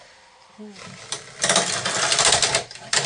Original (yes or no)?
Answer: yes